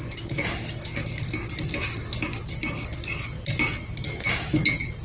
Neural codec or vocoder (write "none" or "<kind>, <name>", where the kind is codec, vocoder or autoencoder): none